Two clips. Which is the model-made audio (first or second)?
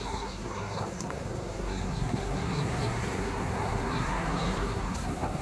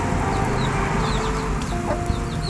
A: first